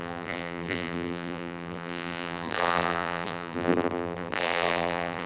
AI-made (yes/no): yes